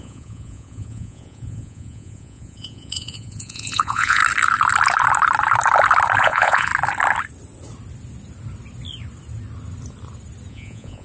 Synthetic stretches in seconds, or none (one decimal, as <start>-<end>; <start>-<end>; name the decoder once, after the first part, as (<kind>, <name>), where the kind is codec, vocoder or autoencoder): 0.0-4.2 (vocoder, Vocos); 6.2-6.7; 10.5-11.0

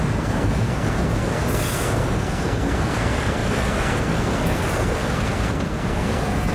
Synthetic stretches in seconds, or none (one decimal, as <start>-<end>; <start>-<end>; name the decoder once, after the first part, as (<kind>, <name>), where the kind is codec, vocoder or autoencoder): 0.0-6.5 (codec, SNAC)

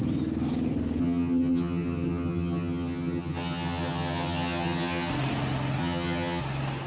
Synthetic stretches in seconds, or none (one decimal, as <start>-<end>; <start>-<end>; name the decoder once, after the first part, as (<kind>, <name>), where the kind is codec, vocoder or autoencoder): 1.0-5.1 (vocoder, HiFi-GAN); 5.8-6.4

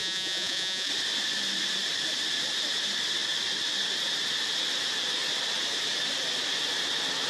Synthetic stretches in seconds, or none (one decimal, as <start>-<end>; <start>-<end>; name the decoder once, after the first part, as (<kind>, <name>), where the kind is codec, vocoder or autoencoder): 0.0-0.9 (vocoder, Vocos)